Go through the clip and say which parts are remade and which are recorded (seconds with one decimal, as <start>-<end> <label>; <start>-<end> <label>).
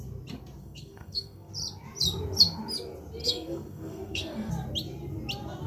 0.0-0.6 recorded; 0.6-1.5 remade; 1.5-3.2 recorded; 3.2-4.5 remade; 4.5-5.7 recorded